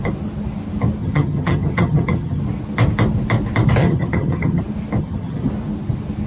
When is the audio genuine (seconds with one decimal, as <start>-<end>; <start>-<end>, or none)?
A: 0.0-1.0; 2.4-3.8; 4.6-5.0; 5.5-6.3